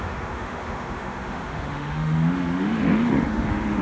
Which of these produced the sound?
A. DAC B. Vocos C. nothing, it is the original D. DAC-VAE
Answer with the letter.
D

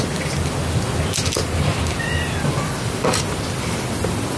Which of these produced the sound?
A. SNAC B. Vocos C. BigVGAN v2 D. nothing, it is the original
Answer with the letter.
D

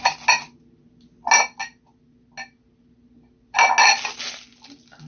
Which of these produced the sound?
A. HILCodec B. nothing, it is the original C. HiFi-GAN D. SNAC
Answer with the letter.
B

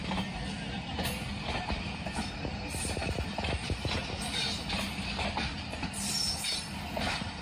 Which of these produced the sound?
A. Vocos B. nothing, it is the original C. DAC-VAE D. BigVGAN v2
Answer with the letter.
B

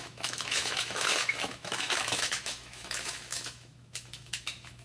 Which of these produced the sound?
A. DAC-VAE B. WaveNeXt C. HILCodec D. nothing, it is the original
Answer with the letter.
A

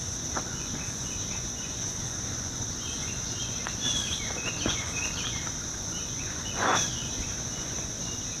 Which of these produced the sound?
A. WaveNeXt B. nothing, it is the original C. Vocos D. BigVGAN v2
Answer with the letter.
C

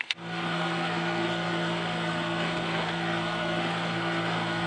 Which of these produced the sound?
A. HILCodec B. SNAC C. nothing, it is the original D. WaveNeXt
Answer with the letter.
B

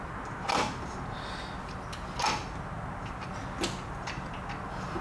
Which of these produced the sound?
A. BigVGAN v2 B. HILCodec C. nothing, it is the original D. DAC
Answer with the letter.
C